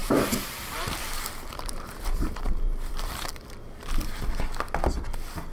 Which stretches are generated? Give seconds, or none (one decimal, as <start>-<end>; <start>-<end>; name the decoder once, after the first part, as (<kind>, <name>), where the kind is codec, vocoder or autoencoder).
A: 0.0-1.1 (vocoder, BigVGAN v2); 1.5-3.3